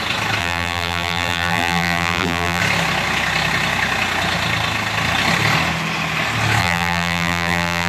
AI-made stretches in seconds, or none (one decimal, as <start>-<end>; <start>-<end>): 0.4-2.6; 6.6-7.9